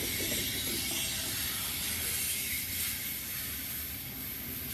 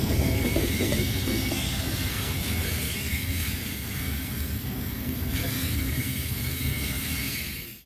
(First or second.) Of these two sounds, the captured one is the first